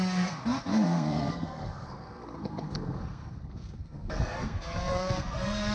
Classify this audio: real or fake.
fake